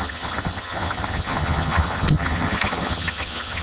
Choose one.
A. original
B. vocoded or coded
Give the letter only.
B